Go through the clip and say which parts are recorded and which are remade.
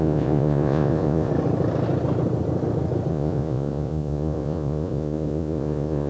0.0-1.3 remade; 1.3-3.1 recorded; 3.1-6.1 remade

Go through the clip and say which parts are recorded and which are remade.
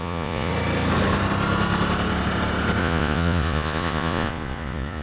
0.0-0.5 remade; 0.5-2.8 recorded; 2.8-5.0 remade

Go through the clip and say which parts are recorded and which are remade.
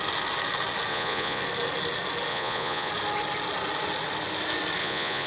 0.0-0.9 recorded; 0.9-1.4 remade; 1.4-2.3 recorded; 2.3-2.9 remade; 2.9-4.8 recorded; 4.8-5.3 remade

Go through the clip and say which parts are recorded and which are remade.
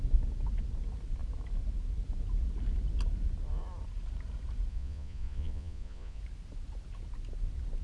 0.0-4.7 recorded; 4.7-6.2 remade; 6.2-7.8 recorded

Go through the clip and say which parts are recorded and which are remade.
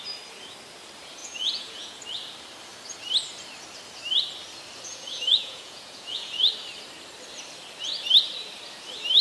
0.0-1.2 recorded; 1.2-2.0 remade; 2.0-4.9 recorded; 4.9-6.4 remade; 6.4-9.2 recorded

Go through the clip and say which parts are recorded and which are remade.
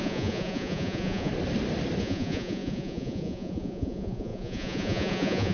0.0-1.3 remade; 1.3-2.0 recorded; 2.0-5.5 remade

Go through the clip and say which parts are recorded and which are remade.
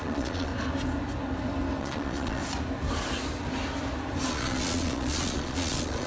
0.0-0.5 remade; 0.5-1.8 recorded; 1.8-2.4 remade; 2.4-4.3 recorded; 4.3-6.1 remade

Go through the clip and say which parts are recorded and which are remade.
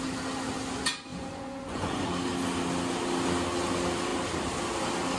0.0-1.1 recorded; 1.1-2.1 remade; 2.1-5.2 recorded